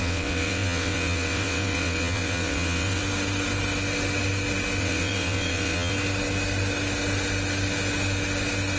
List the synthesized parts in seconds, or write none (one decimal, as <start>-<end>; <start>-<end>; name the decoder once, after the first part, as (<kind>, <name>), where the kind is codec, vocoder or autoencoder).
0.0-3.0 (vocoder, WaveNeXt); 4.8-5.9